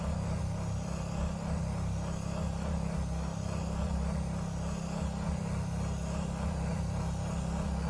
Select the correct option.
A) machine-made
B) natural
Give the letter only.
B